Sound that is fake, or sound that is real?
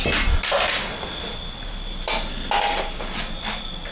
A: real